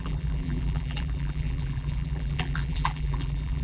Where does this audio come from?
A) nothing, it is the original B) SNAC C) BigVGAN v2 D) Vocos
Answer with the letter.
C